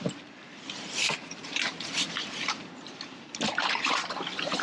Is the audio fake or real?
fake